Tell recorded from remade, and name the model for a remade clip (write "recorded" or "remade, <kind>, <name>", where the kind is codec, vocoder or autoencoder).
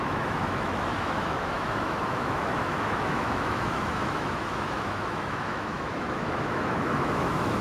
remade, autoencoder, DAC-VAE